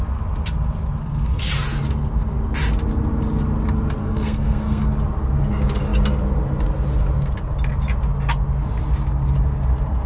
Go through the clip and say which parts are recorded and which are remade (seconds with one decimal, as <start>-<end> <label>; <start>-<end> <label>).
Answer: 0.0-1.0 recorded; 1.0-1.5 remade; 1.5-4.0 recorded; 4.0-4.9 remade; 4.9-10.1 recorded